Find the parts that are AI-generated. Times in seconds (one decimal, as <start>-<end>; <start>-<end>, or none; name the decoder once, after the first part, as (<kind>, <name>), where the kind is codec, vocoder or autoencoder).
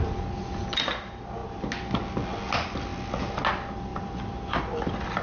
none